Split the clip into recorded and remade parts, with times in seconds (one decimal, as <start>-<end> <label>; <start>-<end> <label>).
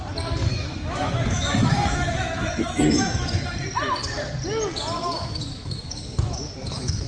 0.0-0.5 recorded; 0.5-3.4 remade; 3.4-5.0 recorded; 5.0-7.1 remade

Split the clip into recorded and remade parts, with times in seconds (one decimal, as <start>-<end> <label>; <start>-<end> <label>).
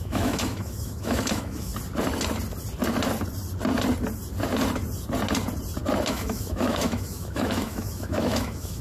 0.0-1.7 remade; 1.7-6.1 recorded; 6.1-8.8 remade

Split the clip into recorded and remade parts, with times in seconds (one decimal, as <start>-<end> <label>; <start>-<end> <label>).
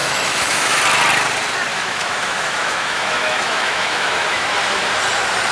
0.0-0.8 remade; 0.8-1.7 recorded; 1.7-4.5 remade; 4.5-5.5 recorded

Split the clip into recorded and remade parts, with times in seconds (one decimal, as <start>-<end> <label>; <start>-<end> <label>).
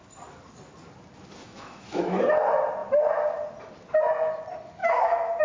0.0-1.4 recorded; 1.4-2.2 remade; 2.2-4.8 recorded; 4.8-5.4 remade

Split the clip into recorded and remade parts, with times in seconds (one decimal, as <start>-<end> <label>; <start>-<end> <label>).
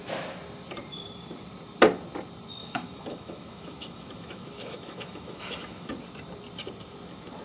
0.0-2.6 recorded; 2.6-5.9 remade; 5.9-7.4 recorded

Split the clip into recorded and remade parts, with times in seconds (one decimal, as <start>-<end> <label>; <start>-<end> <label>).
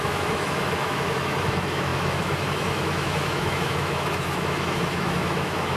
0.0-5.8 remade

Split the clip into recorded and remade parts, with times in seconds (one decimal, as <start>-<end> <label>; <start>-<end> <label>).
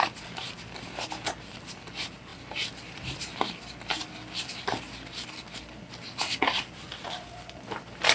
0.0-8.1 recorded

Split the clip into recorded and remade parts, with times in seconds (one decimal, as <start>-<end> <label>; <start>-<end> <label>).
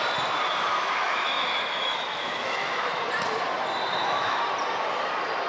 0.0-0.7 recorded; 0.7-3.0 remade; 3.0-3.9 recorded; 3.9-4.4 remade; 4.4-5.5 recorded